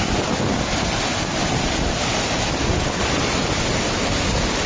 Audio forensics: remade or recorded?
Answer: recorded